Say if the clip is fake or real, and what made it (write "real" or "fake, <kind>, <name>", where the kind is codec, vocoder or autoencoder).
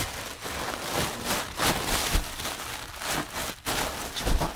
real